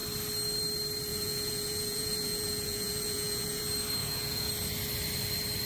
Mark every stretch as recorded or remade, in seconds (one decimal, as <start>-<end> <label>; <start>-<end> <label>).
0.0-1.1 recorded; 1.1-3.6 remade; 3.6-4.0 recorded; 4.0-4.5 remade; 4.5-5.7 recorded